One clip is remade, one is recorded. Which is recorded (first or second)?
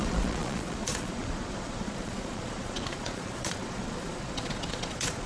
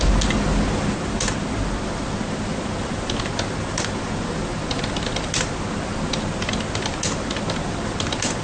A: second